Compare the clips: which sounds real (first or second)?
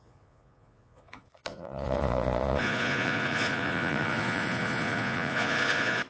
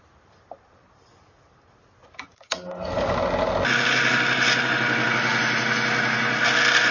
second